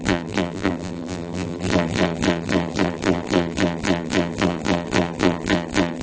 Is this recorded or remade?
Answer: remade